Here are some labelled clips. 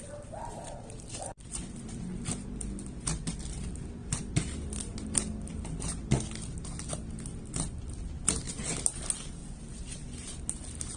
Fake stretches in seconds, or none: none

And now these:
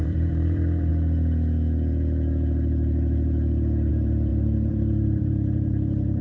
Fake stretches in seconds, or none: 0.0-0.9 (vocoder, BigVGAN v2); 3.9-6.2

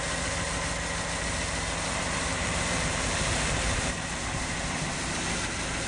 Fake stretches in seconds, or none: 2.3-5.9 (vocoder, BigVGAN v2)